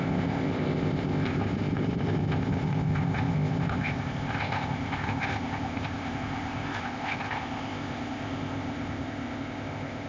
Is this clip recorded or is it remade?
remade